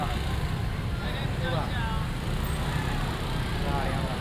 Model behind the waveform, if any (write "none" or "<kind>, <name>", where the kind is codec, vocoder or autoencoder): none